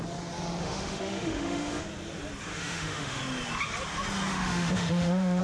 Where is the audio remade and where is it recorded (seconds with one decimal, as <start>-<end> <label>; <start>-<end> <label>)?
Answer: 0.0-0.6 recorded; 0.6-1.8 remade; 1.8-2.5 recorded; 2.5-3.2 remade; 3.2-4.3 recorded; 4.3-5.4 remade